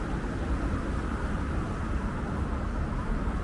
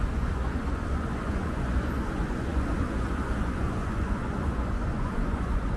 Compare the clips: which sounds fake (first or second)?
second